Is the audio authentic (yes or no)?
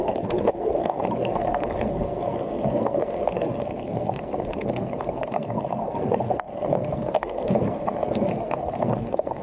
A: no